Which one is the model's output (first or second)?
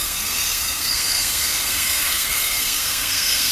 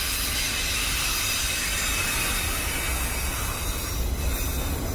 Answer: first